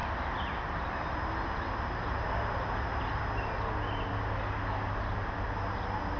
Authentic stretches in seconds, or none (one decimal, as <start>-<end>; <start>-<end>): 0.0-6.2